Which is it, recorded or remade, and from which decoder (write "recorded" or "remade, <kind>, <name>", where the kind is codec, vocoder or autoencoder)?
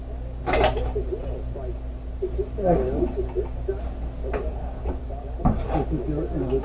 recorded